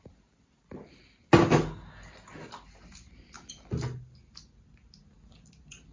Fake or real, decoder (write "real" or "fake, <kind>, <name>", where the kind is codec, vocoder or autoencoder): real